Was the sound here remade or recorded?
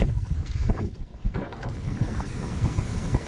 remade